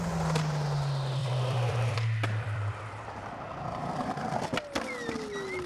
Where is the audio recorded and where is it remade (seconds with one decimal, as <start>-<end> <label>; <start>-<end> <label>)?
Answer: 0.0-1.2 recorded; 1.2-4.6 remade; 4.6-5.7 recorded